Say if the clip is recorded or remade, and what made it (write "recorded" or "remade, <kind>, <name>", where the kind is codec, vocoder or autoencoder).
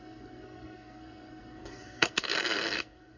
remade, codec, SNAC